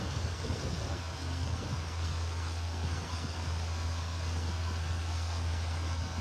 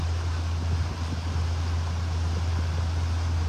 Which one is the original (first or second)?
second